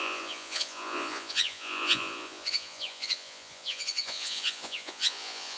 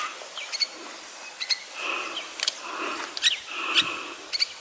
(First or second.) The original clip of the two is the second